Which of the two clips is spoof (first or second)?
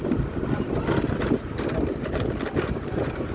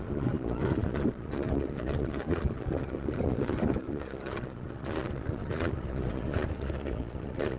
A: second